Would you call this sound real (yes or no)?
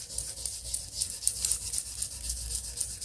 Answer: yes